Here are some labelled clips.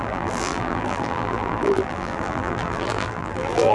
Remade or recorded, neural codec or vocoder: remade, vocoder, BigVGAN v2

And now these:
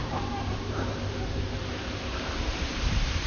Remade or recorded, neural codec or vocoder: remade, vocoder, BigVGAN v2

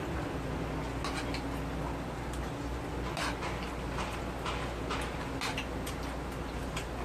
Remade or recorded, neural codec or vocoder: recorded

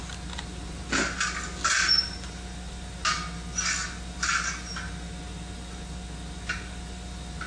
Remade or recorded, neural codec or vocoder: recorded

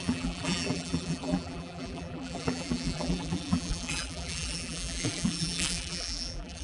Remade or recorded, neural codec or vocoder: remade, vocoder, BigVGAN v2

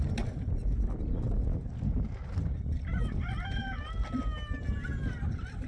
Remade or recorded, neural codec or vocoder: recorded